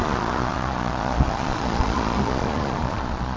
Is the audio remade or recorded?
remade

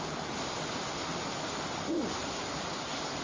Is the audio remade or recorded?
recorded